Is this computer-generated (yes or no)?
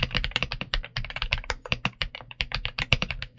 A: yes